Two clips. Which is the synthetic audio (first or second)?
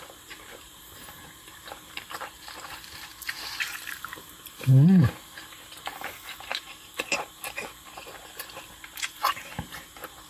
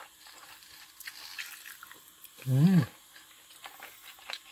first